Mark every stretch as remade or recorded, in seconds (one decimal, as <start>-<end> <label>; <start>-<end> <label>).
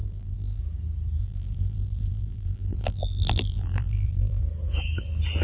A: 0.0-0.6 remade; 0.6-1.2 recorded; 1.2-4.4 remade; 4.4-5.4 recorded